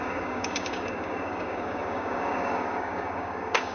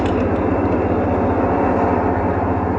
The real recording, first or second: second